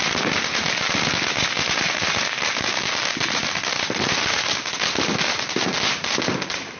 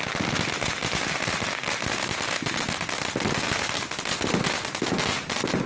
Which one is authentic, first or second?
second